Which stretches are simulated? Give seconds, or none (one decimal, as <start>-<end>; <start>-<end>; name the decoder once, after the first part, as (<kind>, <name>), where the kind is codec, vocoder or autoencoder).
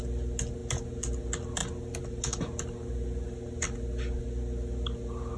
none